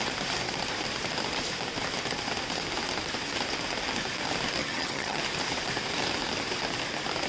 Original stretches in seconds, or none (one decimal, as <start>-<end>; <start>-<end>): 0.0-4.6; 5.2-7.3